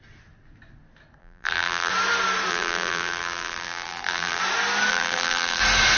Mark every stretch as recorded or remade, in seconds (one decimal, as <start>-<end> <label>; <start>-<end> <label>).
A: 0.0-1.2 recorded; 1.2-1.9 remade; 1.9-2.5 recorded; 2.5-4.4 remade; 4.4-4.9 recorded; 4.9-5.6 remade; 5.6-6.0 recorded